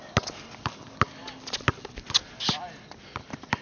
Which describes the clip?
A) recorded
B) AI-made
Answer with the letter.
A